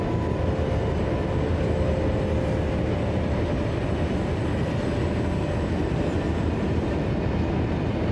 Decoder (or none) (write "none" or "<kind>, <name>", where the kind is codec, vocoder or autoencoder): none